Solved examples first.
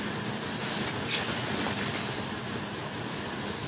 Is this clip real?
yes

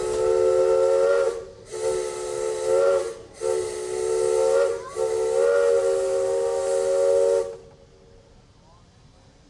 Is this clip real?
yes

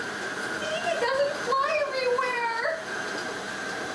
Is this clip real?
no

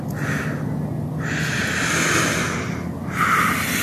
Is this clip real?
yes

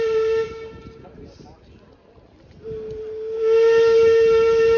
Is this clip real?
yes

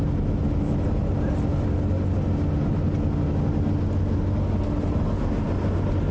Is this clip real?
yes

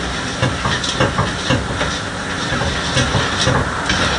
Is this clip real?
yes